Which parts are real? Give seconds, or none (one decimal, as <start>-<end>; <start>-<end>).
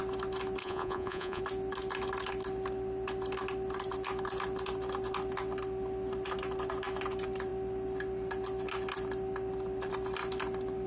0.0-0.6; 1.4-10.9